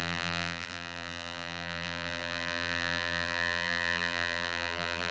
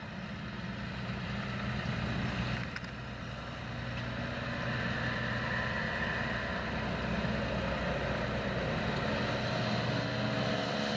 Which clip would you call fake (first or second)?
first